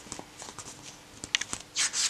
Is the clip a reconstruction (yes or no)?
no